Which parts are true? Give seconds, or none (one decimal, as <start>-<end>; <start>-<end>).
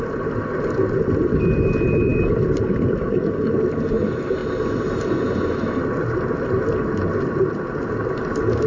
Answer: 0.0-3.0; 3.5-8.7